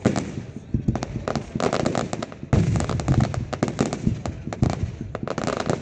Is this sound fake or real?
real